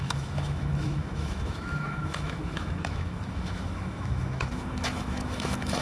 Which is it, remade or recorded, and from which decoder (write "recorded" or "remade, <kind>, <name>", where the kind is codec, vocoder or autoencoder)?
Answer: remade, autoencoder, DAC-VAE